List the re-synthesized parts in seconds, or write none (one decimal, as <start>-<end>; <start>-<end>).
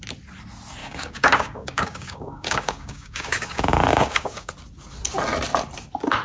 0.8-4.5